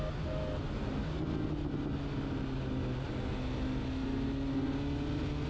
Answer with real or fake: real